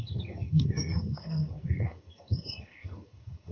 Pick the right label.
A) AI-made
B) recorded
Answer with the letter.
A